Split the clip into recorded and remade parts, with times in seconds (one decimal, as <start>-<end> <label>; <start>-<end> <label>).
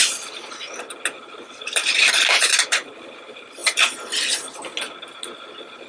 0.0-1.2 recorded; 1.2-1.8 remade; 1.8-2.3 recorded; 2.3-3.6 remade; 3.6-5.9 recorded